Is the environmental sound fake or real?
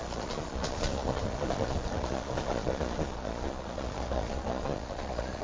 fake